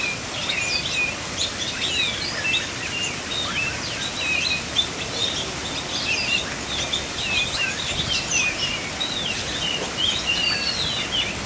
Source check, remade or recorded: recorded